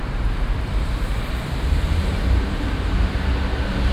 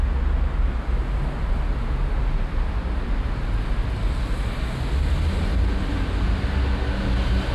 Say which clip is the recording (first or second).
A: second